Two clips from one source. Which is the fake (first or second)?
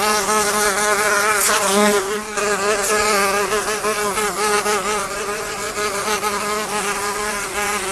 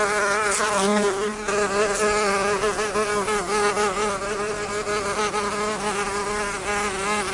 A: first